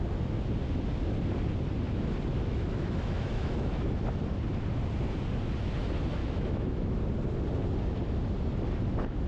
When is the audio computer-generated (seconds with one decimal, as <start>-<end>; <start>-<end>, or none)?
2.3-4.0; 6.2-7.0